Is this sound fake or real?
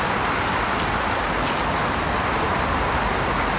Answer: real